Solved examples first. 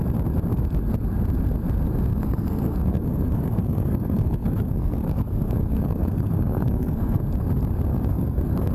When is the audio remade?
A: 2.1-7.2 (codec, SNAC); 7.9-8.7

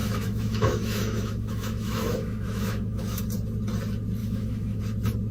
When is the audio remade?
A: 0.0-3.2 (autoencoder, DAC-VAE); 4.2-4.8

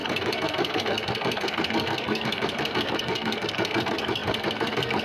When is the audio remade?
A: 0.0-5.0 (codec, SNAC)

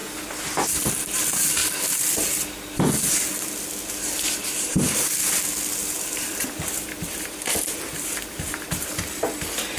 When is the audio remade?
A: 5.8-9.0 (vocoder, BigVGAN v2)

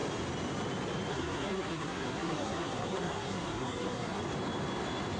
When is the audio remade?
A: 1.1-4.2 (codec, SNAC)

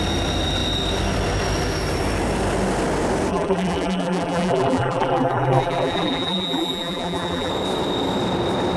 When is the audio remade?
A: 3.3-7.5 (vocoder, BigVGAN v2)